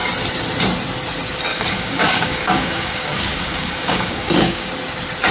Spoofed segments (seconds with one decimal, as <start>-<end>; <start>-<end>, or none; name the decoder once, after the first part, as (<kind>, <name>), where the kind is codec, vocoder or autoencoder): 1.5-4.7 (codec, DAC)